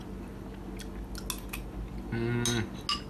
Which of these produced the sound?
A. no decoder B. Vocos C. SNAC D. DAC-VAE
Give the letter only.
A